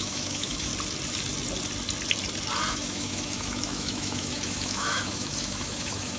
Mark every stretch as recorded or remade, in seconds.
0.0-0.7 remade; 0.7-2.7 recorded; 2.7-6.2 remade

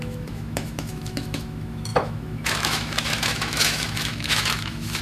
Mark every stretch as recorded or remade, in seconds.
0.0-5.0 remade

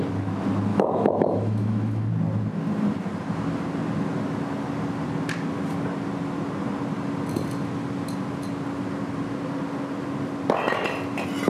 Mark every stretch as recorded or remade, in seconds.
0.0-0.7 recorded; 0.7-2.1 remade; 2.1-11.5 recorded

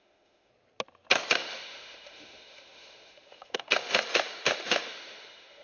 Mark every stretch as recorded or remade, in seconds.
0.0-0.5 remade; 0.5-1.3 recorded; 1.3-5.6 remade